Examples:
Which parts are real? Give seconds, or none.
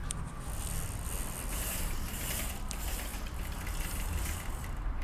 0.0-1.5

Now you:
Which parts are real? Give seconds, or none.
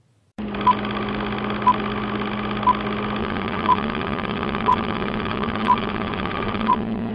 0.0-3.2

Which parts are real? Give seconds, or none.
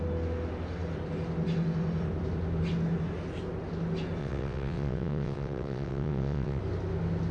0.0-4.2; 6.6-7.3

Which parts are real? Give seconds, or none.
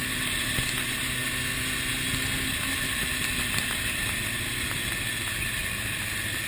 0.5-6.5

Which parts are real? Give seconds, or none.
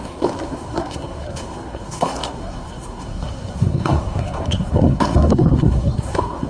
none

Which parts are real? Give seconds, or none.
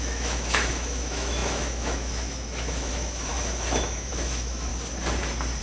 4.7-5.6